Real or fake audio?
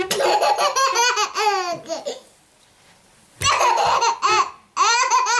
real